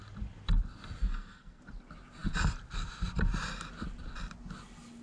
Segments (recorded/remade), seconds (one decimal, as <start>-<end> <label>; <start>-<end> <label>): 0.0-1.0 recorded; 1.0-1.6 remade; 1.6-5.0 recorded